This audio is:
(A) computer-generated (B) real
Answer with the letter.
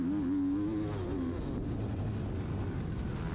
B